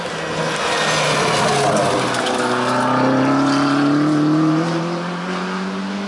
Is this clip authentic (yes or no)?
yes